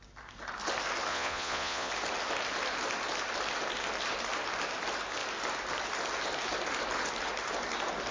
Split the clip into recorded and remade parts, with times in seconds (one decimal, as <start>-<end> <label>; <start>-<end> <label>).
0.0-1.1 recorded; 1.1-1.9 remade; 1.9-8.1 recorded